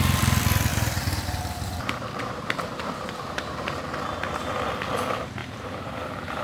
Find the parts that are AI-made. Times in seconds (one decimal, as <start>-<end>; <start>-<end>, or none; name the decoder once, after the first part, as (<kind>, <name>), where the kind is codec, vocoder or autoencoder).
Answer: 0.7-3.8 (vocoder, BigVGAN v2); 5.4-6.0